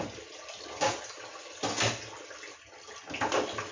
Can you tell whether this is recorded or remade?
recorded